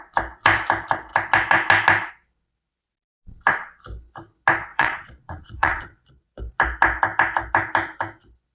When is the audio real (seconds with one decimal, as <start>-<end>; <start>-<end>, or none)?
0.0-4.7; 6.4-8.5